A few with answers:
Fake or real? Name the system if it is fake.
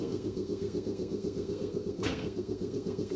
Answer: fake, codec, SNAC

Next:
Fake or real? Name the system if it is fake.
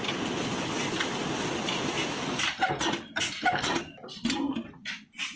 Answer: real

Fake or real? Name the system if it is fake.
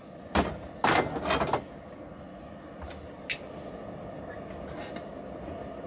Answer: real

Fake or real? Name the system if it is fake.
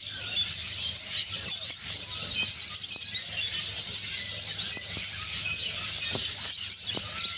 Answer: fake, vocoder, BigVGAN v2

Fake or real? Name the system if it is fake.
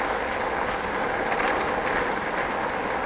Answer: real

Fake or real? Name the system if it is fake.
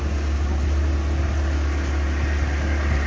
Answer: real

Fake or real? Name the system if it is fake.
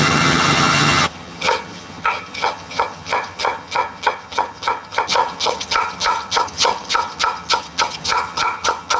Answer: fake, vocoder, HiFi-GAN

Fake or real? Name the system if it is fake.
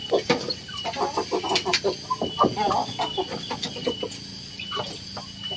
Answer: real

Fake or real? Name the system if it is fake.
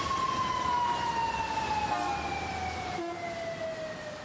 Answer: real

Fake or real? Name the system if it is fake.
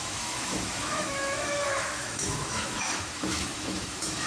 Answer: fake, autoencoder, DAC-VAE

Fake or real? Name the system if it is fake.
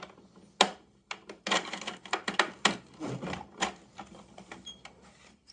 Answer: real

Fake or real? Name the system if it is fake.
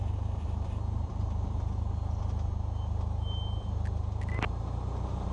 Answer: real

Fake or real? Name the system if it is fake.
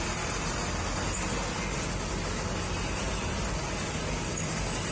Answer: real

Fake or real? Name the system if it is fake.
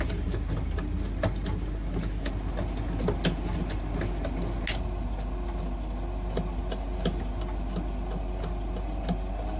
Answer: real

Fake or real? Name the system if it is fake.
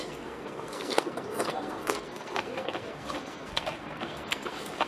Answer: fake, codec, SNAC